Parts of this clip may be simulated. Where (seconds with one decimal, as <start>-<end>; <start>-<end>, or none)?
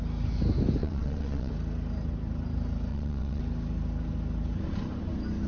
0.8-1.5; 2.9-3.4